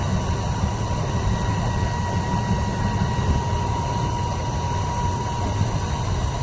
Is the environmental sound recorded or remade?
recorded